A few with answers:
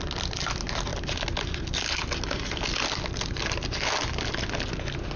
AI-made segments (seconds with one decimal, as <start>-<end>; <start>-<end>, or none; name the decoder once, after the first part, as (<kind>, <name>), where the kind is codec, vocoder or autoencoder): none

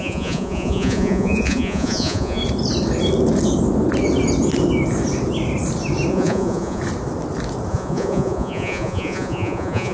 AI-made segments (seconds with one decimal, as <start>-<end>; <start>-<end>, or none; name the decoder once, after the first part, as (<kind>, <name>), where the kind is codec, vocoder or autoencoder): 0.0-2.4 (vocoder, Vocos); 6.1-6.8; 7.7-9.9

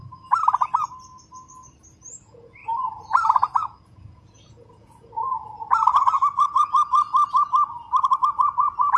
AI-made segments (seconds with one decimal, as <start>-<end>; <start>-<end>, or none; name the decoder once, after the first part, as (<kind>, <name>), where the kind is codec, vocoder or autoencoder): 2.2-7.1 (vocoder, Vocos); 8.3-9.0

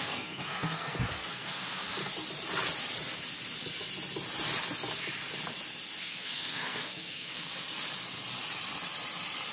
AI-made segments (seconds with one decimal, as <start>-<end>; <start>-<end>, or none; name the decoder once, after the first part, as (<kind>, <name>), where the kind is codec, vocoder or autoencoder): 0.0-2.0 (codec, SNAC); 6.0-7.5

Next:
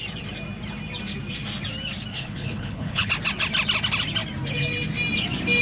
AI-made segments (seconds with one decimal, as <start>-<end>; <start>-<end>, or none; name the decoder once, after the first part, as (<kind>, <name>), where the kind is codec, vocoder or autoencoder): 2.1-3.1 (codec, HILCodec)